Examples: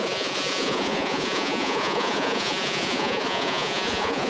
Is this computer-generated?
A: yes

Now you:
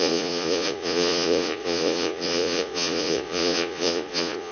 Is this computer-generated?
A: yes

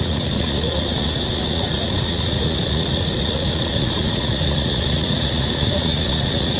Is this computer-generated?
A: yes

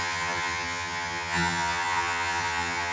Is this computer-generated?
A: yes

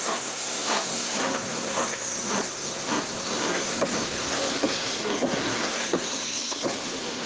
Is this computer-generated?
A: yes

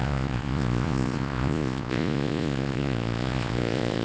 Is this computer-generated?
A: yes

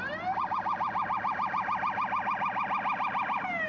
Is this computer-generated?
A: yes